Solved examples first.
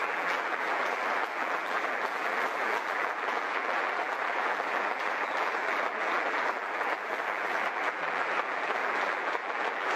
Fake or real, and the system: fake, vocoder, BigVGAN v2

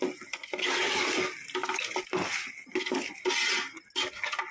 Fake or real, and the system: real